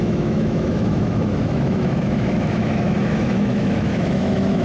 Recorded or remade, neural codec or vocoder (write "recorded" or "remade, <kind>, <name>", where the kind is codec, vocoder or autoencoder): remade, autoencoder, DAC-VAE